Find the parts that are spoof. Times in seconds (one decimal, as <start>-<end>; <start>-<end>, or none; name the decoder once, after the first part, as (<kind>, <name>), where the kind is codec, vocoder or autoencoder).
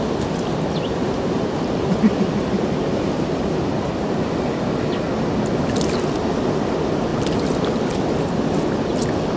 1.0-4.5 (vocoder, BigVGAN v2)